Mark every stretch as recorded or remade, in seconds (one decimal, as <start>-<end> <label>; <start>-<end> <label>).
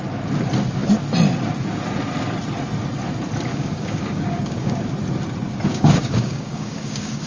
0.0-3.5 recorded; 3.5-4.8 remade; 4.8-5.7 recorded; 5.7-7.3 remade